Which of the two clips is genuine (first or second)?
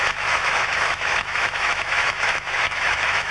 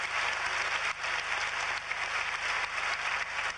second